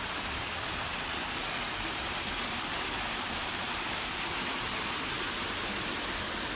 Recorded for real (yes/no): yes